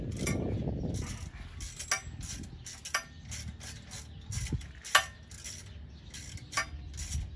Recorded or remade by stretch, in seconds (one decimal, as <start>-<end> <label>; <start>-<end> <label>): 0.0-7.4 recorded